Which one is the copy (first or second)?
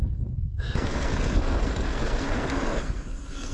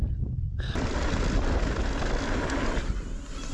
first